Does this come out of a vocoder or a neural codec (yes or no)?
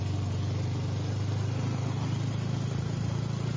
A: no